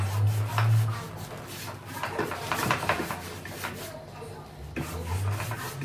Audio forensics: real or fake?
real